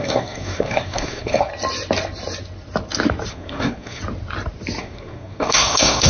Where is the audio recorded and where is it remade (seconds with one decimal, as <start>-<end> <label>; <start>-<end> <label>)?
0.0-1.5 remade; 1.5-3.3 recorded; 3.3-4.0 remade; 4.0-4.8 recorded; 4.8-6.1 remade